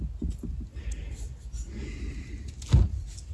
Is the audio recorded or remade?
recorded